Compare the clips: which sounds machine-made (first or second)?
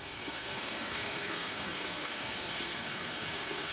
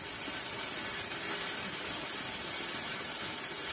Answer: first